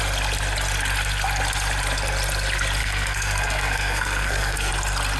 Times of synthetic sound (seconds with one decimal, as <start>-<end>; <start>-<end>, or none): 2.8-4.7

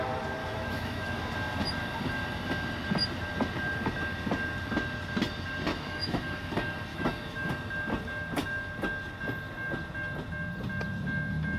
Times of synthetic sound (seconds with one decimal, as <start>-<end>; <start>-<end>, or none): 0.4-1.2; 5.7-6.5; 6.9-7.5